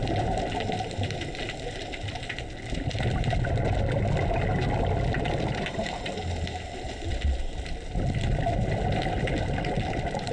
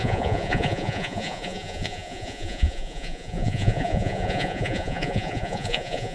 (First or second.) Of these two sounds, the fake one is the second